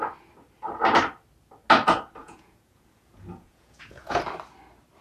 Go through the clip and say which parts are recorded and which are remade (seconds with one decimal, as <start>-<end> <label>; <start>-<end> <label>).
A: 0.0-2.2 recorded; 2.2-4.2 remade; 4.2-5.0 recorded

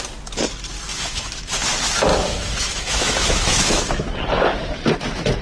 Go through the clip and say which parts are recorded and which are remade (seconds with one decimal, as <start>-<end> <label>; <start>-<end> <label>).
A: 0.0-0.9 recorded; 0.9-1.5 remade; 1.5-2.1 recorded; 2.1-4.1 remade; 4.1-5.4 recorded

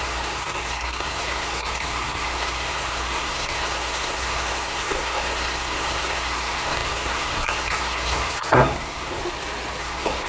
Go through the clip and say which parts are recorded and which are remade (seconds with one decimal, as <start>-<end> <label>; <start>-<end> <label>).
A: 0.0-9.2 remade; 9.2-9.8 recorded; 9.8-10.3 remade

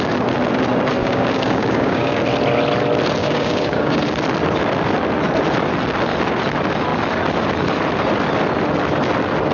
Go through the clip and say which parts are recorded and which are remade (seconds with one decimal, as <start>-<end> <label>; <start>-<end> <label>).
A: 0.0-1.0 recorded; 1.0-2.2 remade; 2.2-3.2 recorded; 3.2-4.0 remade; 4.0-9.5 recorded

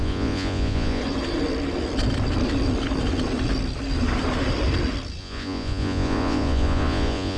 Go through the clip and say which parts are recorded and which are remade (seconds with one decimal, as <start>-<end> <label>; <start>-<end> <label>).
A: 0.0-1.0 remade; 1.0-5.2 recorded; 5.2-7.4 remade

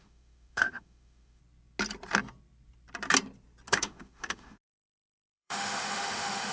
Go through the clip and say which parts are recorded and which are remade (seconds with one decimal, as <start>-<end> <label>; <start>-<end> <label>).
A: 0.0-1.4 remade; 1.4-3.7 recorded; 3.7-6.5 remade

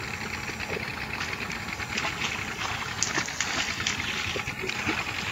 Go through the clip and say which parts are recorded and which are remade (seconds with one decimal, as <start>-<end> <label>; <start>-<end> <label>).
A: 0.0-5.3 recorded

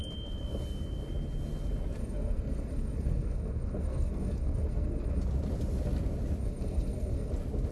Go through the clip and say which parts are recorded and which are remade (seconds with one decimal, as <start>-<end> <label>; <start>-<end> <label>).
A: 0.0-2.0 recorded; 2.0-5.2 remade; 5.2-6.4 recorded; 6.4-7.3 remade; 7.3-7.7 recorded